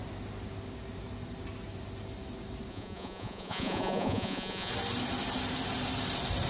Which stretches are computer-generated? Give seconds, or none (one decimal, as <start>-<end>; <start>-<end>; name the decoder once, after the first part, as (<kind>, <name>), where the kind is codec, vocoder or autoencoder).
2.7-4.7 (vocoder, Vocos)